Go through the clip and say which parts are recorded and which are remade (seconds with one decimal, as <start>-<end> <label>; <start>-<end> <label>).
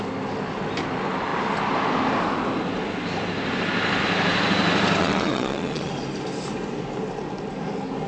0.0-5.0 recorded; 5.0-5.9 remade; 5.9-8.1 recorded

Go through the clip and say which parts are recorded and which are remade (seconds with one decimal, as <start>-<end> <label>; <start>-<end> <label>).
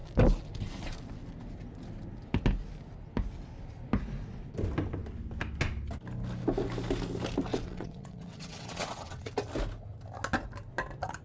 0.0-7.5 recorded; 7.5-9.3 remade; 9.3-11.2 recorded